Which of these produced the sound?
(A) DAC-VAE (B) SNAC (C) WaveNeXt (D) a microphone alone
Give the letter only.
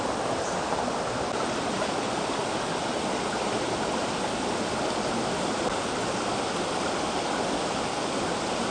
D